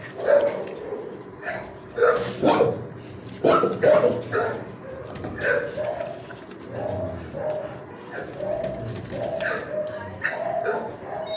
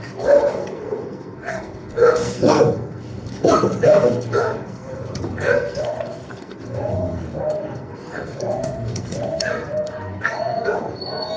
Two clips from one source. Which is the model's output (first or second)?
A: second